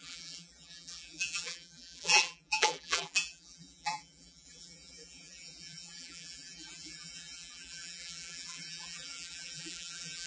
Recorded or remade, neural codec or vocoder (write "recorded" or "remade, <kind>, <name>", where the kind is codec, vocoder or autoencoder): remade, vocoder, BigVGAN v2